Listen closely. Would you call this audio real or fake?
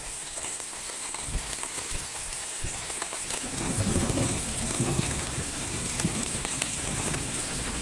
fake